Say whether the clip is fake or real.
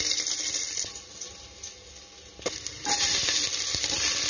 fake